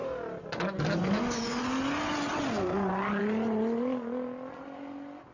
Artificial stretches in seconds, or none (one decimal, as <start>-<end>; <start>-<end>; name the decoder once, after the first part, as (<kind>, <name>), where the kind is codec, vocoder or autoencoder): none